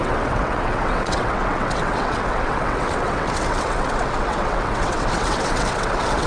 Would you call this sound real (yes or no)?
no